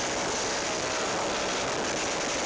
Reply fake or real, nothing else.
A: real